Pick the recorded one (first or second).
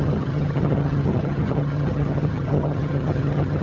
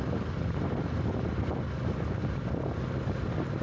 second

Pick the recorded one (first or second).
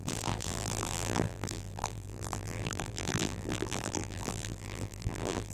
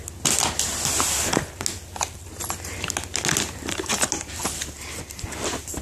second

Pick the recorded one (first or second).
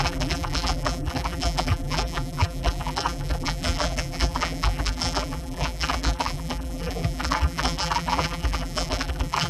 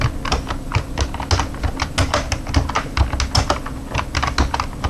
second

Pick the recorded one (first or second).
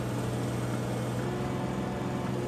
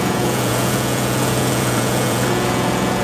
first